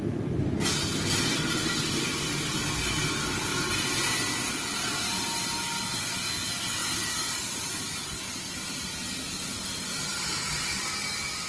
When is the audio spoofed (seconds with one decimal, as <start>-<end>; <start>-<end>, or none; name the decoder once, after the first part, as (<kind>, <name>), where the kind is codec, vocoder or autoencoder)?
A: none